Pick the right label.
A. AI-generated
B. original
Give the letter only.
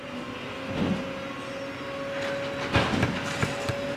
B